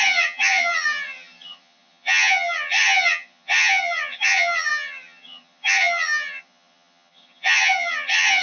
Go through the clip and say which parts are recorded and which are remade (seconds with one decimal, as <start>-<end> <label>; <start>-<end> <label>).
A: 0.0-8.4 remade